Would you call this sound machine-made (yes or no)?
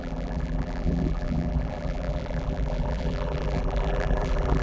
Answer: yes